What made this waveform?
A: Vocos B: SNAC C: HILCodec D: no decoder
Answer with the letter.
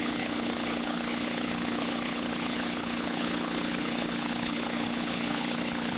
C